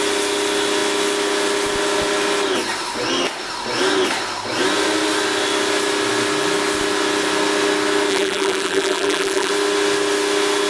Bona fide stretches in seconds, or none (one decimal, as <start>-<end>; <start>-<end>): 0.0-8.1; 9.5-10.7